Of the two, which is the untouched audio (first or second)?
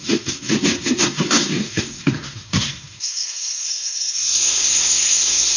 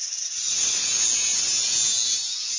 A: second